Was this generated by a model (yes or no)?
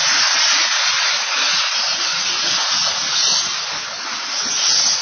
no